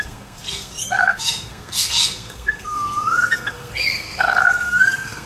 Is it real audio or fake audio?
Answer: fake